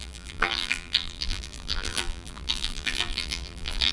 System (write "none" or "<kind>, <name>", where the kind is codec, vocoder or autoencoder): vocoder, BigVGAN v2